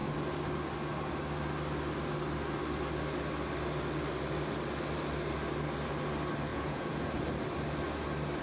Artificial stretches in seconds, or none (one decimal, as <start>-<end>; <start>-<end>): 6.5-7.1